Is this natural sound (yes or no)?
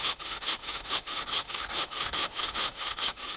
no